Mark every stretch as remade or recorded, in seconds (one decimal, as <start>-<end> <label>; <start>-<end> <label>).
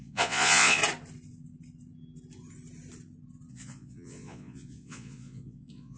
0.0-0.8 remade; 0.8-3.5 recorded; 3.5-6.0 remade